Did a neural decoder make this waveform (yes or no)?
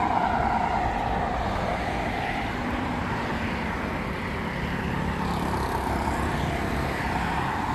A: no